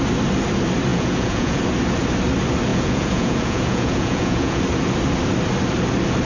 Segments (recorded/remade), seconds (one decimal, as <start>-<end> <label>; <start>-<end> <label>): 0.0-0.9 recorded; 0.9-1.6 remade; 1.6-2.7 recorded; 2.7-4.6 remade; 4.6-6.2 recorded